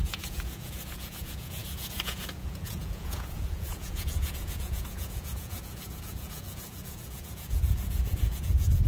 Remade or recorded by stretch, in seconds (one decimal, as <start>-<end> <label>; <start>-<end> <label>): 0.0-8.9 remade